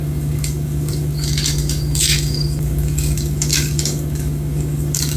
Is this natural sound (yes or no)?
no